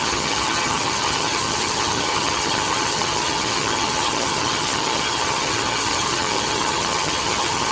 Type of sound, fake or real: fake